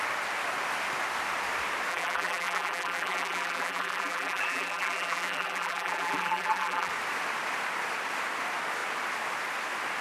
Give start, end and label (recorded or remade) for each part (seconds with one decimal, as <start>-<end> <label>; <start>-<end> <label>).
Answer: 0.0-1.9 recorded; 1.9-6.9 remade; 6.9-10.0 recorded